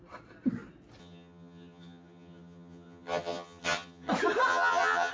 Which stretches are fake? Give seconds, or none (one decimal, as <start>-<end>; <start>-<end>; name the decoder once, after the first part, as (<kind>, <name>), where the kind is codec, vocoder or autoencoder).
1.0-4.1 (vocoder, HiFi-GAN); 4.5-5.1